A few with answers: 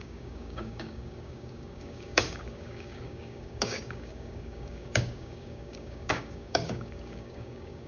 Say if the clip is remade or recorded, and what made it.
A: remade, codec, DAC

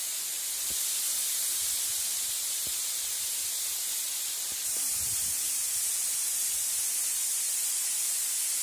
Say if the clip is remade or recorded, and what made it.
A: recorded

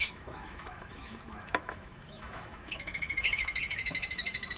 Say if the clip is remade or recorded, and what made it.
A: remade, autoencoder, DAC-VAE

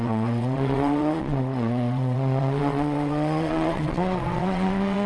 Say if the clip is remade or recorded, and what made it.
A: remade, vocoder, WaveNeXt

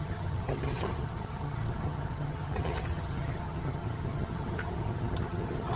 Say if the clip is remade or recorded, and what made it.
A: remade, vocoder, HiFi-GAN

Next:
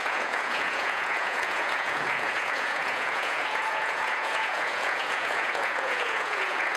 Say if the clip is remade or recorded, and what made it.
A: remade, vocoder, Vocos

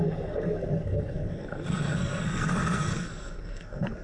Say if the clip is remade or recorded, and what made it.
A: remade, codec, SNAC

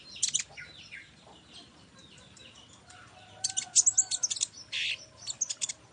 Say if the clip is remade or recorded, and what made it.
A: recorded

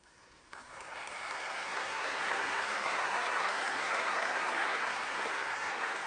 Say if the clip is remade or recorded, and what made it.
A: remade, codec, SNAC